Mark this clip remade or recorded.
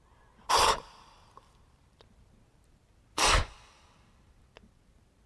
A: recorded